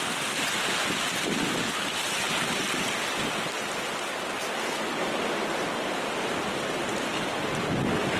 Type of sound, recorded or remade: recorded